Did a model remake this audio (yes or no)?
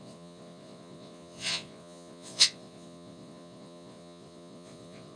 yes